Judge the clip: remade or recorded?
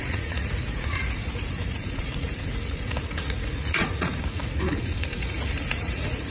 remade